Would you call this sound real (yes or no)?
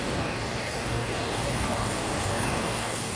no